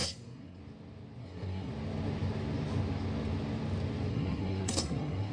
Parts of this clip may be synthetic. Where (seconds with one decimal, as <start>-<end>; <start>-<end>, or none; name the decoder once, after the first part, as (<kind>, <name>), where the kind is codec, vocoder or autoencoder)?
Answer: 0.0-0.6 (codec, SNAC); 1.2-1.7; 4.1-5.3